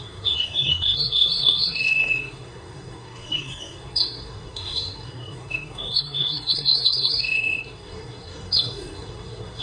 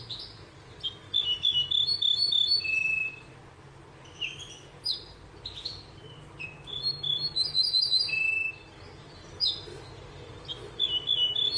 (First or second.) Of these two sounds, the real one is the second